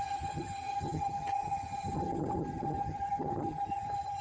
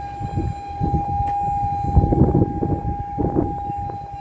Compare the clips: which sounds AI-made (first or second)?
first